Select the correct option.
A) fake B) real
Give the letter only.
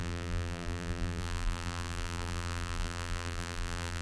A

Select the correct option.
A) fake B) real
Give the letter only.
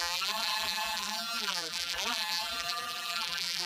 A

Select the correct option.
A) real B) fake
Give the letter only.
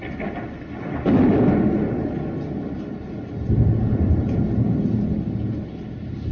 A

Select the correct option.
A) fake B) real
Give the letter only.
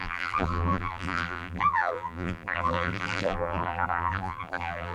A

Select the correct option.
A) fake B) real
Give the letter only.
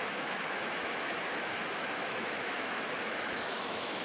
A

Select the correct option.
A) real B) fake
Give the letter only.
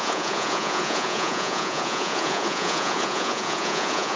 B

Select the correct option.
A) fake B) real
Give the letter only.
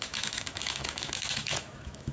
A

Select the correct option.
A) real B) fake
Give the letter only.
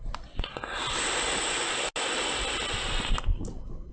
A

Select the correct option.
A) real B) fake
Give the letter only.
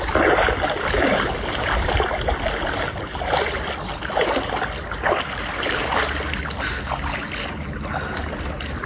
A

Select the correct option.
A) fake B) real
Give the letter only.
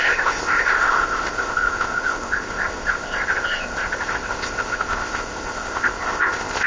A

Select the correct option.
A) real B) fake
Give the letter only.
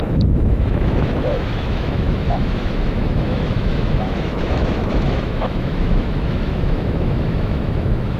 B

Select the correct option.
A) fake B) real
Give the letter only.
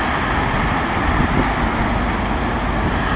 B